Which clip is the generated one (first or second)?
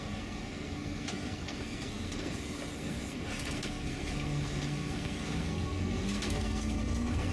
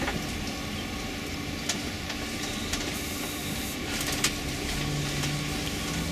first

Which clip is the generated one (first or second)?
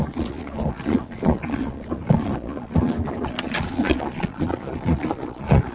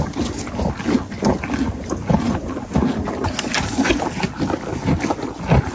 first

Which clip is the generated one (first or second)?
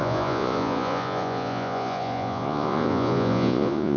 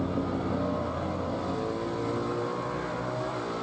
first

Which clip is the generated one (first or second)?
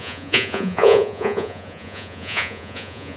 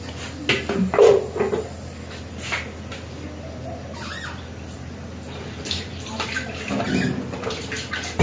first